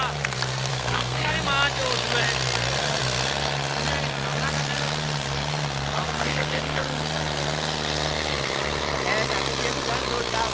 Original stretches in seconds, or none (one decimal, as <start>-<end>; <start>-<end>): 0.0-0.7; 1.3-6.2; 6.8-10.5